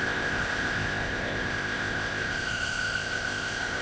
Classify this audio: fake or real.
fake